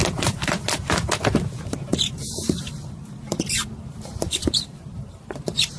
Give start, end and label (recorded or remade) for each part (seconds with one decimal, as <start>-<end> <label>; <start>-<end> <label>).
0.0-0.6 remade; 0.6-1.9 recorded; 1.9-5.8 remade